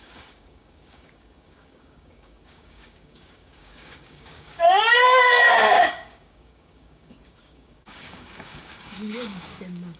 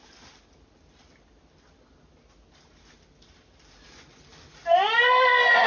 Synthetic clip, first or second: first